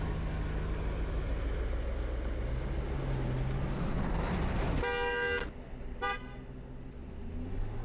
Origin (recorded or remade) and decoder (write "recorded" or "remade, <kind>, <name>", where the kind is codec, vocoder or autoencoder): recorded